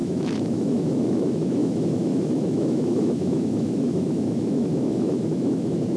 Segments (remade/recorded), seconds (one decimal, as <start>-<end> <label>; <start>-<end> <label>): 0.0-6.0 remade